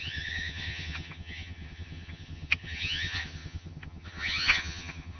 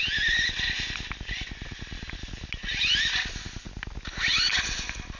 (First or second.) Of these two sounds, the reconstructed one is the first